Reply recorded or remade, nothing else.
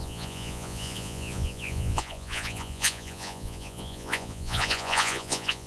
remade